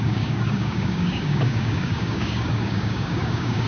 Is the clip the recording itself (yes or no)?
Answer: no